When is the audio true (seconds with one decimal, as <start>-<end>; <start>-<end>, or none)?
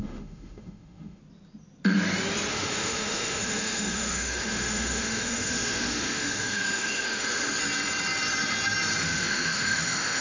1.2-2.5; 7.6-9.0